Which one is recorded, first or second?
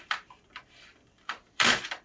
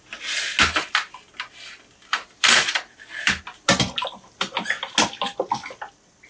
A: second